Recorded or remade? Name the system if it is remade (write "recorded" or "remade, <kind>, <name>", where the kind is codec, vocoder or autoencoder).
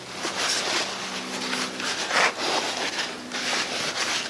recorded